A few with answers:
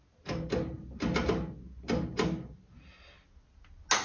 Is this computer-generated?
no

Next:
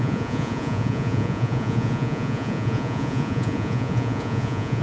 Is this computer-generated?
yes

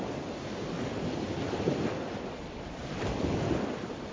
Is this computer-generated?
no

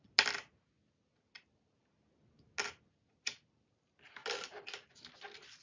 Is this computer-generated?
no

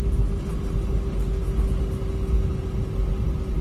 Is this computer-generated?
no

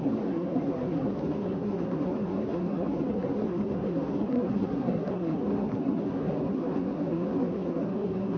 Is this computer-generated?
yes